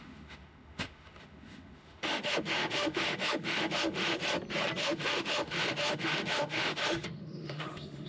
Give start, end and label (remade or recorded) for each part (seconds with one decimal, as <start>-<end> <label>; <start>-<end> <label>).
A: 0.0-4.2 remade; 4.2-4.8 recorded; 4.8-8.1 remade